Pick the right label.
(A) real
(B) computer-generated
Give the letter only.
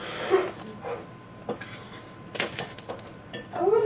A